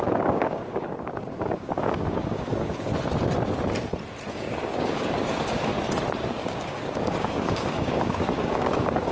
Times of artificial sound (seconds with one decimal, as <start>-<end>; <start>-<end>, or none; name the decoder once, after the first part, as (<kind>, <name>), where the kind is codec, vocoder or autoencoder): 0.0-2.9 (codec, DAC); 4.3-5.7; 6.3-9.1